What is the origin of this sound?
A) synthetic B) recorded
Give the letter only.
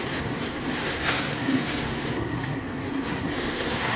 A